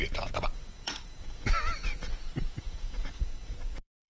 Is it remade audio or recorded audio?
remade